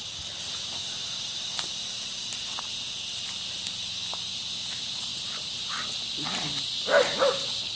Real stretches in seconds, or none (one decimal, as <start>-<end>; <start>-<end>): 0.0-7.8